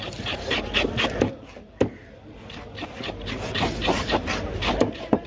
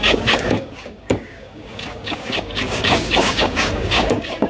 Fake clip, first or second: second